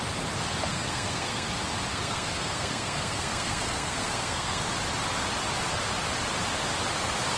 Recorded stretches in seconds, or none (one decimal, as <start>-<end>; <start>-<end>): 0.0-0.7; 1.5-1.9; 4.6-7.4